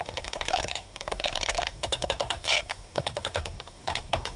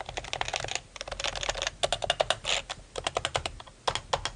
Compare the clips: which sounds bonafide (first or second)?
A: second